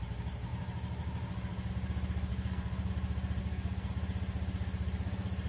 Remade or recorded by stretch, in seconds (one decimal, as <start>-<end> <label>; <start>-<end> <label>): 0.0-2.3 recorded; 2.3-2.9 remade; 2.9-3.4 recorded; 3.4-3.9 remade; 3.9-5.5 recorded